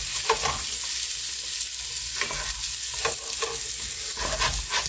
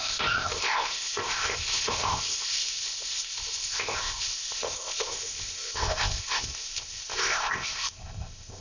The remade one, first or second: second